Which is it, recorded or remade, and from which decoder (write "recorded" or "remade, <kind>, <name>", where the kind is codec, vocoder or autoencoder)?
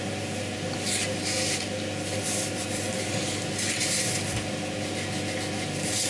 recorded